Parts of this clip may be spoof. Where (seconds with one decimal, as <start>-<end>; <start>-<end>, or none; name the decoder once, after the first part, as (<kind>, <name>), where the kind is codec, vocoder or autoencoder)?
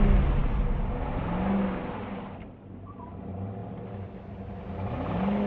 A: none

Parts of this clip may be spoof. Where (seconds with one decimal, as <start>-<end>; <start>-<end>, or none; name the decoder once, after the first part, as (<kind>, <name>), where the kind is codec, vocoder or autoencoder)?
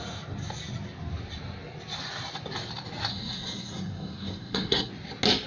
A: 3.1-4.9 (codec, SNAC)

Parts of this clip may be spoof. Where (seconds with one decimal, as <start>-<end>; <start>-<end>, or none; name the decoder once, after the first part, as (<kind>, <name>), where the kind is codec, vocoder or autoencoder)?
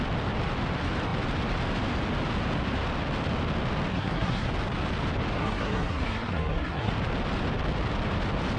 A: 3.9-4.5 (codec, SNAC); 5.4-6.9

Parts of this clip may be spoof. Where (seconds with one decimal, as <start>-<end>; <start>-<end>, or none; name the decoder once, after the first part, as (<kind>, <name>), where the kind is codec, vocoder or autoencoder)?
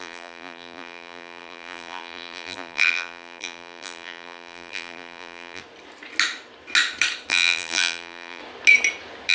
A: 0.0-5.6 (vocoder, BigVGAN v2); 7.3-8.4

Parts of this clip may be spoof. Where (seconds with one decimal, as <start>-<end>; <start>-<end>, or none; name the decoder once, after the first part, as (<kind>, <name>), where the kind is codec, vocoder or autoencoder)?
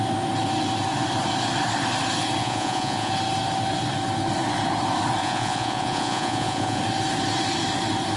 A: 2.4-3.1 (vocoder, Vocos); 5.2-6.8